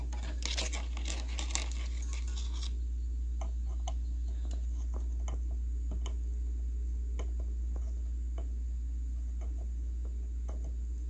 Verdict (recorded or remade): recorded